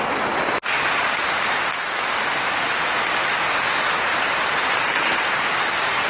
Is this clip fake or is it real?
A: real